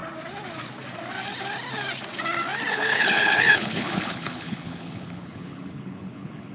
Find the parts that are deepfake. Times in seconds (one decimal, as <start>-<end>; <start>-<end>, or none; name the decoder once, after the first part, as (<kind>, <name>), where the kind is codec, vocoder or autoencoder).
2.7-6.5 (codec, HILCodec)

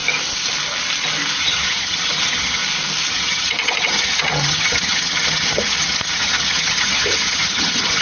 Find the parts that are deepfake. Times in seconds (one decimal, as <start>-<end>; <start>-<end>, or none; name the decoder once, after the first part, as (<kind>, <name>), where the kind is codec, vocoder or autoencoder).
1.4-2.6 (vocoder, HiFi-GAN); 3.1-8.0

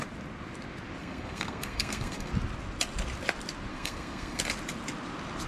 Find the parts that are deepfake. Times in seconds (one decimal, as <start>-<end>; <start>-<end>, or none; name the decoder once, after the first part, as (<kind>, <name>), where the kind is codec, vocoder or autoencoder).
1.0-2.3 (codec, SNAC); 3.7-4.4

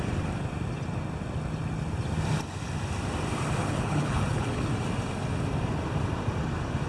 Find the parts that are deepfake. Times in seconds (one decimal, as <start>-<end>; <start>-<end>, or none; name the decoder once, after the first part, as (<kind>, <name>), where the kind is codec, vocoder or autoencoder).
3.6-4.6 (codec, HILCodec)

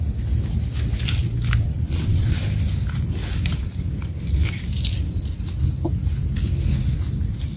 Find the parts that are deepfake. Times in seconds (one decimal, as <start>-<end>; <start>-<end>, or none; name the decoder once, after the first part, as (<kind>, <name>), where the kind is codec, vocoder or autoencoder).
1.6-2.4 (vocoder, WaveNeXt)